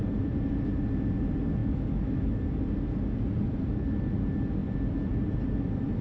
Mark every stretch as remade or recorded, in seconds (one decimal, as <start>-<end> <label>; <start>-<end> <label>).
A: 0.0-1.6 recorded; 1.6-2.4 remade; 2.4-6.0 recorded